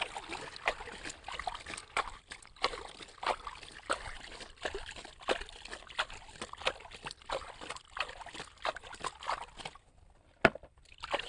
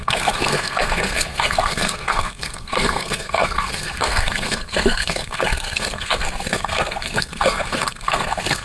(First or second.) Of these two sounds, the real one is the first